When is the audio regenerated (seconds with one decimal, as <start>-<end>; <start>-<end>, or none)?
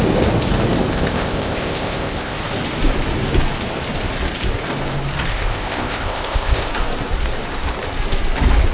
0.9-2.4; 5.3-6.7